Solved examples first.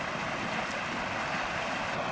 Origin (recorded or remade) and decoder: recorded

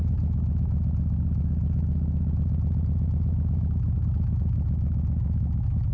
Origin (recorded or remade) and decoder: remade, autoencoder, DAC-VAE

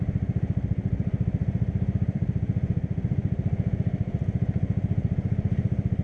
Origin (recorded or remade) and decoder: remade, vocoder, BigVGAN v2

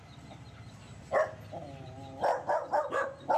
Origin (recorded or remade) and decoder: recorded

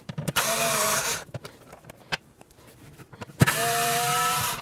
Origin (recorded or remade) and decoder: remade, vocoder, BigVGAN v2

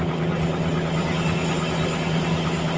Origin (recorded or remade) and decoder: recorded